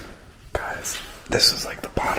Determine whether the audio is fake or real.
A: fake